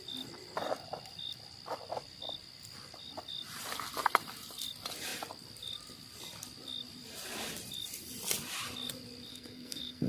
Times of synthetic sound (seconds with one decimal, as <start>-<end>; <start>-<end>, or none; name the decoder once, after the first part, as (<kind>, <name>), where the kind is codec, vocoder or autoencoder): 9.3-10.1 (codec, SNAC)